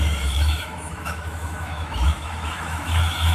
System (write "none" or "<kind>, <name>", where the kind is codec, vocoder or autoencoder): autoencoder, DAC-VAE